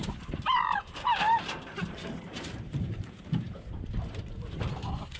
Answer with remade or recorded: remade